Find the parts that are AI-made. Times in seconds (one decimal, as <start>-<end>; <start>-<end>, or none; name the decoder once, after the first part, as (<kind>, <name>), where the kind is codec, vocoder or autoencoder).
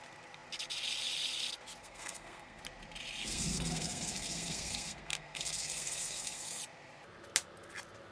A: 1.8-2.6 (codec, SNAC); 3.2-6.6